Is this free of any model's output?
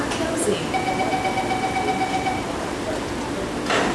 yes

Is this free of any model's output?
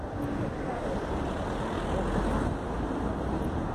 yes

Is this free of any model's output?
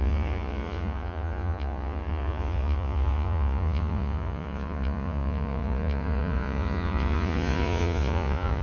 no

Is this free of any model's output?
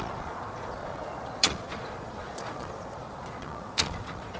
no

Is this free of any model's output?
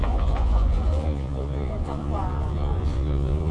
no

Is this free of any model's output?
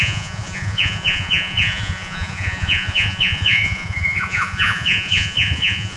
no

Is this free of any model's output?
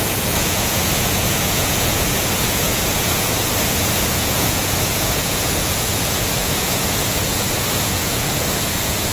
no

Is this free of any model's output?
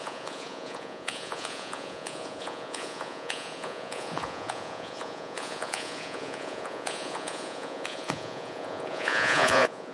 no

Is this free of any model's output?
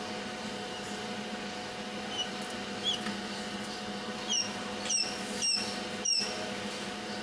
yes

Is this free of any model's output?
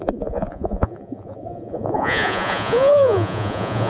no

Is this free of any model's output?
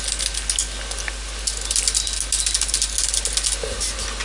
yes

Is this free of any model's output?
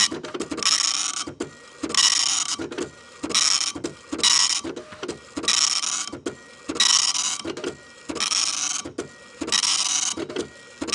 yes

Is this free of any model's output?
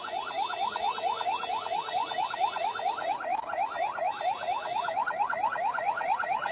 no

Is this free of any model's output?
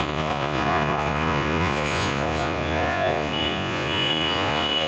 no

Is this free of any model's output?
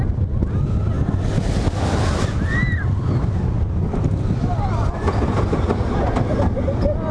yes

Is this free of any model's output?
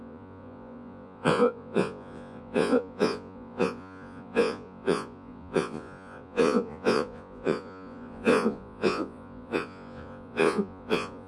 no